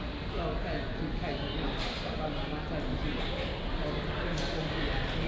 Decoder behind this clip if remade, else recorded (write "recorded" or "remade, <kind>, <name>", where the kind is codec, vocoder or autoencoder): recorded